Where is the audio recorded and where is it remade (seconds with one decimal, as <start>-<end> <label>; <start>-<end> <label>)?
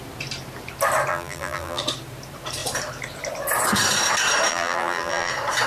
0.0-1.1 recorded; 1.1-1.8 remade; 1.8-4.5 recorded; 4.5-5.3 remade; 5.3-5.7 recorded